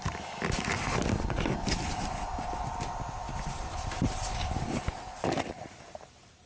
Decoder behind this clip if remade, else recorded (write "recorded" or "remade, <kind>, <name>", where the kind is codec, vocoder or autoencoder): recorded